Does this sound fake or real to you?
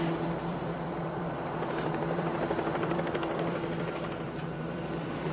fake